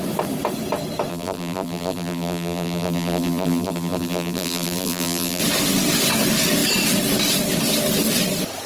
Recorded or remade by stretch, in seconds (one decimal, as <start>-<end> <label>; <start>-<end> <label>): 0.0-1.1 recorded; 1.1-5.4 remade; 5.4-8.7 recorded